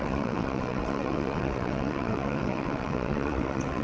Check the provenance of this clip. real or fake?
fake